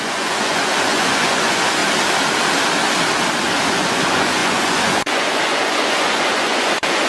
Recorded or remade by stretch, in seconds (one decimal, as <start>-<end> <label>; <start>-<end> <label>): 0.0-1.8 remade; 1.8-3.7 recorded; 3.7-7.1 remade